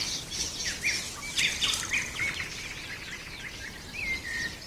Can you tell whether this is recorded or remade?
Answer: recorded